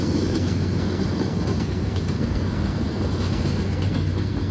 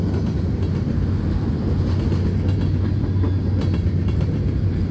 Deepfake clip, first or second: first